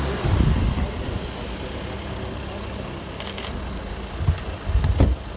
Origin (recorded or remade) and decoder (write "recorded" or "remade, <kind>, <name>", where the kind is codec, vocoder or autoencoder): recorded